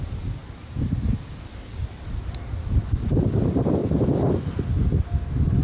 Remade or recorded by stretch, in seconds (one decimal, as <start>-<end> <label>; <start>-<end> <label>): 0.0-5.6 recorded